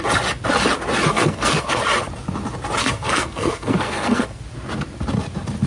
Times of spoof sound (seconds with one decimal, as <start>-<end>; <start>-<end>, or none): 1.1-1.8; 2.8-4.4